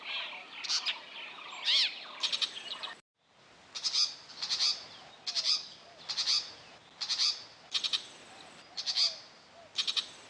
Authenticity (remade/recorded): recorded